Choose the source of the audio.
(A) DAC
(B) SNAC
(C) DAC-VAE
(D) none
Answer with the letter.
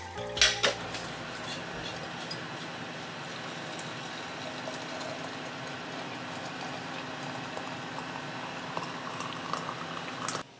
D